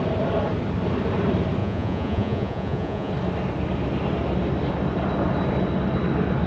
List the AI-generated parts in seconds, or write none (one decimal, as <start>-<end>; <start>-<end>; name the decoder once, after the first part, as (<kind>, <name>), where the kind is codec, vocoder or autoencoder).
1.6-3.1 (vocoder, Vocos)